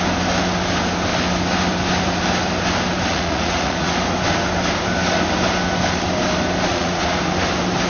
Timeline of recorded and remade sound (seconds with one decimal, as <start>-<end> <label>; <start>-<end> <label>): 0.0-3.1 recorded; 3.1-3.9 remade; 3.9-6.7 recorded; 6.7-7.2 remade; 7.2-7.9 recorded